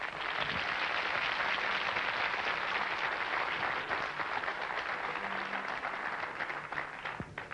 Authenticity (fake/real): real